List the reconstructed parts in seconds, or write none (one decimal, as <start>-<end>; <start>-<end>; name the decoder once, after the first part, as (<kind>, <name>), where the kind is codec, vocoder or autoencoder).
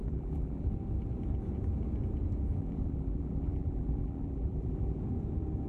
0.0-0.7 (vocoder, BigVGAN v2); 2.6-5.0